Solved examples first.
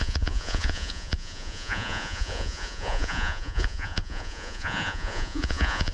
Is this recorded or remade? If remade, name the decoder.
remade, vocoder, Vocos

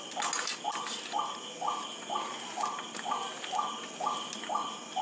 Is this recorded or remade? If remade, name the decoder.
recorded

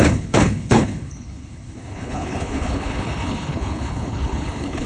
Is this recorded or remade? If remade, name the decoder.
remade, codec, HILCodec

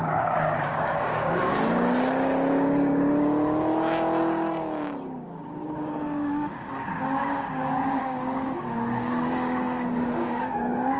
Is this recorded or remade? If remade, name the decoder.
remade, codec, DAC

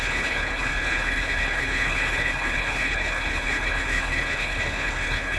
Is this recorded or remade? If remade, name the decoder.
remade, codec, HILCodec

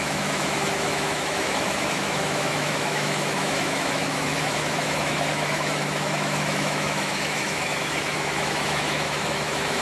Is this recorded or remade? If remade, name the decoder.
remade, autoencoder, DAC-VAE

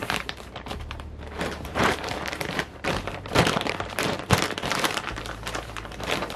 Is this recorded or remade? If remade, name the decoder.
remade, vocoder, BigVGAN v2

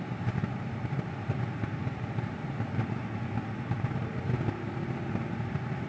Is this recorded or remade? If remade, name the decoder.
remade, vocoder, BigVGAN v2